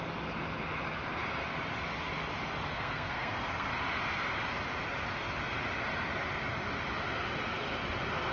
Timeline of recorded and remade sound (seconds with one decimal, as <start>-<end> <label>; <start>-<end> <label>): 0.0-2.7 recorded; 2.7-3.7 remade; 3.7-8.3 recorded